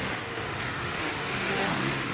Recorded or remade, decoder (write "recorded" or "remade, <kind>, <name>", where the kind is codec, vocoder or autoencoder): remade, autoencoder, DAC-VAE